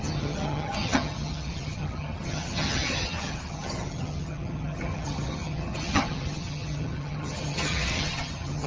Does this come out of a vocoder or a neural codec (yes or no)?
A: yes